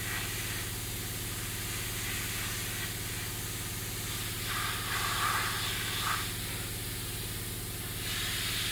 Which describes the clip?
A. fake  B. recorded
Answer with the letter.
B